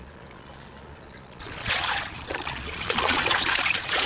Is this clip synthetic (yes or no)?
yes